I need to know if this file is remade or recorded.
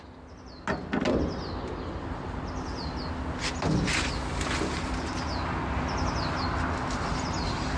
recorded